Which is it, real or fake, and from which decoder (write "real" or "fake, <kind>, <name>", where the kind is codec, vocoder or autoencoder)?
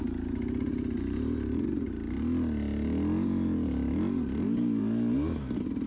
real